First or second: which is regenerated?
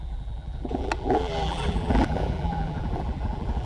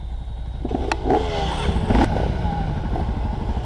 first